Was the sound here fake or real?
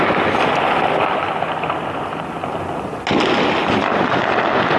real